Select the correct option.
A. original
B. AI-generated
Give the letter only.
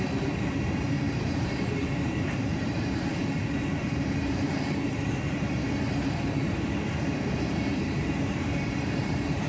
B